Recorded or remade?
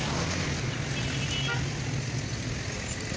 recorded